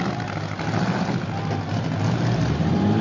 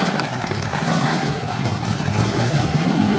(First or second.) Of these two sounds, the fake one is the second